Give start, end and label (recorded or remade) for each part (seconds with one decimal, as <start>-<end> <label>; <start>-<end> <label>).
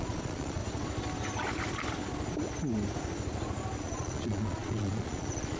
0.0-0.6 remade; 0.6-3.8 recorded; 3.8-5.6 remade